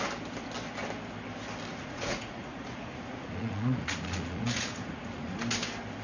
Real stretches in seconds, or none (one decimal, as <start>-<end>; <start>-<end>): 0.0-1.7; 5.3-6.0